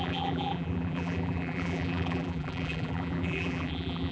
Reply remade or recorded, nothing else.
remade